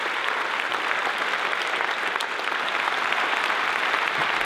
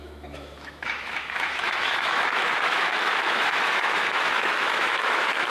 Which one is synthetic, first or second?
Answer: second